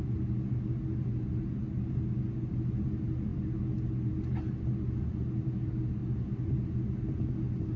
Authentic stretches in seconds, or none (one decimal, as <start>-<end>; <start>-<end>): 0.0-7.8